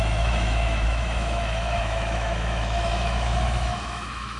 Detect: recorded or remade remade